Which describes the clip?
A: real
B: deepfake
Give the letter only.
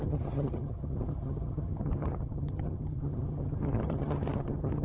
B